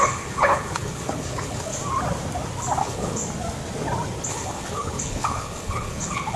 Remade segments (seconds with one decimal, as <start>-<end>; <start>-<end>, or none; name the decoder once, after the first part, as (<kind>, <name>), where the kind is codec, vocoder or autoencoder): 0.0-1.7 (codec, HILCodec); 2.8-3.2; 4.3-6.4